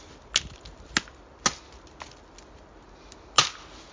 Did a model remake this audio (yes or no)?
no